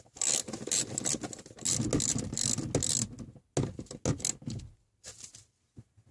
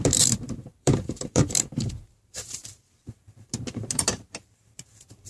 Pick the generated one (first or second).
second